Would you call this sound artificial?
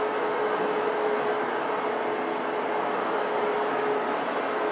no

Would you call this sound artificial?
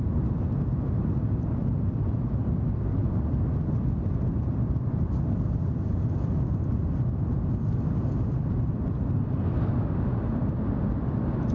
no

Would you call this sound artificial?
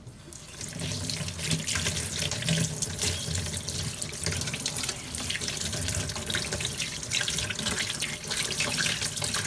no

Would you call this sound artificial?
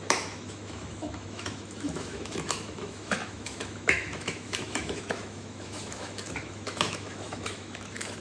yes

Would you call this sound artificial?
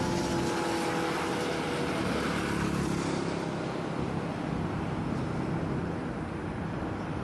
no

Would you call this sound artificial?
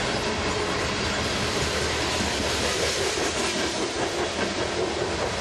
no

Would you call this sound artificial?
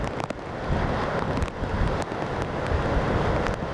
no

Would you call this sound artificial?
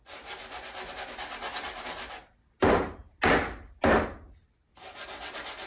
no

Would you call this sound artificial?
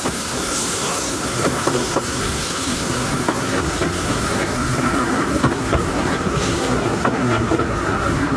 yes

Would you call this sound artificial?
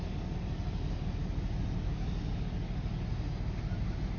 no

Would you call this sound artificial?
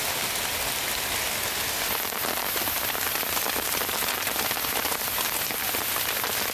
no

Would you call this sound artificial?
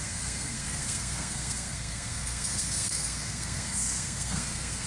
yes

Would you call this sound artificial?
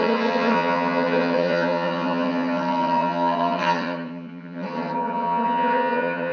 yes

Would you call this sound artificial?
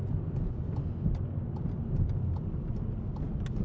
no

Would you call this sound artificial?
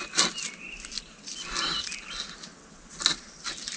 no